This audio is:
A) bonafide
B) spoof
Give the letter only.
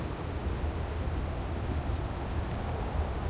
A